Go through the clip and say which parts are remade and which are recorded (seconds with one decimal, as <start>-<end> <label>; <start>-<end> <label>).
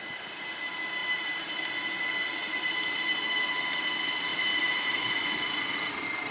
0.0-1.0 recorded; 1.0-1.7 remade; 1.7-4.3 recorded; 4.3-5.1 remade; 5.1-6.3 recorded